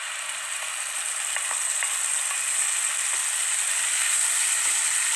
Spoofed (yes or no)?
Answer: no